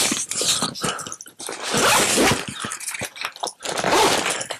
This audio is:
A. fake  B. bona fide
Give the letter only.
B